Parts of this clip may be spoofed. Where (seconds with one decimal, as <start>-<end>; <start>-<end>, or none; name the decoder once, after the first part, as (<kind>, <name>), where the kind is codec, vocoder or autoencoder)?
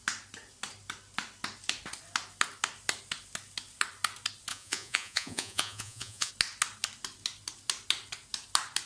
4.5-6.3 (vocoder, Vocos)